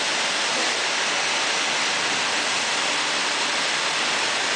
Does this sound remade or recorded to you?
recorded